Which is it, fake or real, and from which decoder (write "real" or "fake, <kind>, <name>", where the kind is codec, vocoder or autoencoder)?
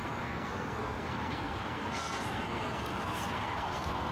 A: fake, codec, SNAC